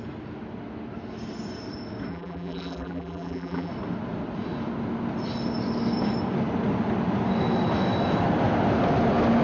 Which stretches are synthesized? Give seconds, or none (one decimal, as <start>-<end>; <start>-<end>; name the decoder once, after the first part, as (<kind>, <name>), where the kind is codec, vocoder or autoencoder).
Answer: 2.1-3.7 (vocoder, BigVGAN v2)